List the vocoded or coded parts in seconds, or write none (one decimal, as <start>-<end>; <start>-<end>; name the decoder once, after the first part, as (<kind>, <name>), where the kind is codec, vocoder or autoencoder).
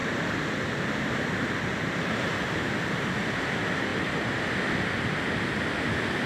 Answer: 0.0-0.6 (vocoder, BigVGAN v2); 3.9-5.5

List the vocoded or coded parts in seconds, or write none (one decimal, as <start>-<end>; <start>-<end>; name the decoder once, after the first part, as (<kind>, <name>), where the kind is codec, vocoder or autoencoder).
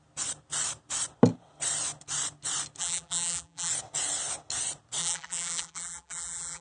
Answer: 2.8-3.7 (vocoder, BigVGAN v2); 5.0-6.6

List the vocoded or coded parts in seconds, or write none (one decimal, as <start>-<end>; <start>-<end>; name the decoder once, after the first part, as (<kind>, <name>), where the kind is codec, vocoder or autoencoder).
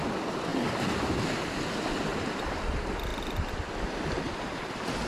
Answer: 0.5-1.2 (vocoder, BigVGAN v2); 2.1-2.6; 4.3-5.1